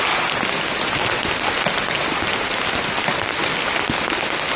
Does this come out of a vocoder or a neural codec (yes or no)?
no